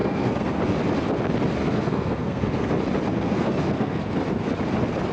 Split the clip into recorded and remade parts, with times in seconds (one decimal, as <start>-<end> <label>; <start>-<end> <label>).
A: 0.0-0.6 remade; 0.6-1.6 recorded; 1.6-2.7 remade; 2.7-3.1 recorded; 3.1-4.0 remade; 4.0-5.1 recorded